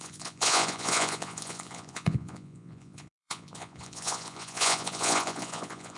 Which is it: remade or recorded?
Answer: remade